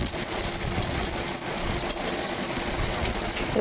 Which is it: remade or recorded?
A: remade